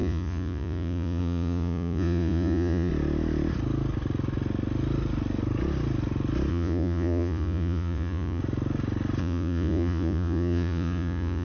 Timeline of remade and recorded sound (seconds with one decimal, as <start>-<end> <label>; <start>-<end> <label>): 0.0-2.9 remade; 2.9-6.5 recorded; 6.5-8.4 remade; 8.4-9.2 recorded; 9.2-11.4 remade